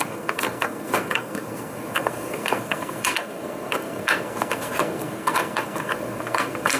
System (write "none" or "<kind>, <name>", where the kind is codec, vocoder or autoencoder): codec, SNAC